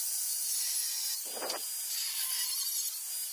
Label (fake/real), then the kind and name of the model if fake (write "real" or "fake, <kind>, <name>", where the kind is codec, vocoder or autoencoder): real